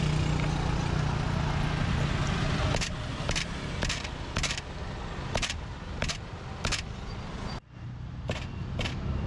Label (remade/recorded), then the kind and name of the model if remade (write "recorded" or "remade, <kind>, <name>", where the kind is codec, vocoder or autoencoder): recorded